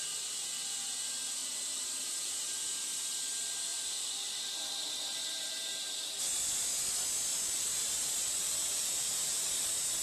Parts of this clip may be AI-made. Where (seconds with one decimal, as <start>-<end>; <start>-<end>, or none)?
3.7-4.4; 5.1-6.2; 7.3-9.6